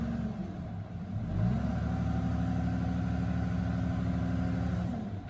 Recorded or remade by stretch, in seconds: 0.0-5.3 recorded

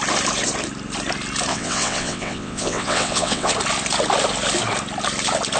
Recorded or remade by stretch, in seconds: 0.0-1.5 recorded; 1.5-3.5 remade; 3.5-5.6 recorded

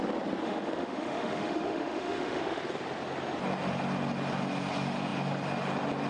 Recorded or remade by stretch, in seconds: 0.0-0.4 recorded; 0.4-2.6 remade; 2.6-6.1 recorded

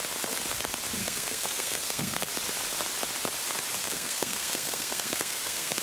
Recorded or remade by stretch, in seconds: 0.0-1.0 recorded; 1.0-2.3 remade; 2.3-3.8 recorded; 3.8-5.8 remade

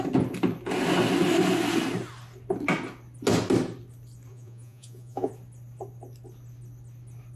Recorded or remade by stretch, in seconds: 0.0-4.3 recorded; 4.3-5.3 remade; 5.3-7.4 recorded

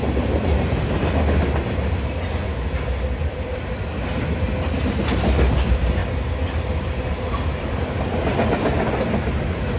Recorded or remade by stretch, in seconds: 0.0-9.8 recorded

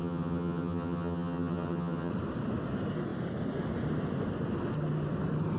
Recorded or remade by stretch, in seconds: 0.0-2.1 remade; 2.1-5.6 recorded

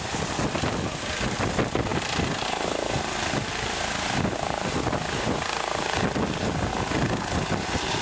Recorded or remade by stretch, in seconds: 0.0-8.0 recorded